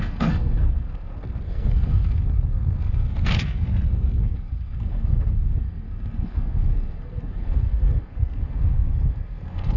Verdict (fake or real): fake